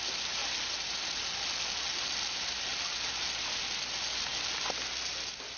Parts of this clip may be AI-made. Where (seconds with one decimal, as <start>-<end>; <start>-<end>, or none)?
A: 0.4-2.1; 2.7-3.5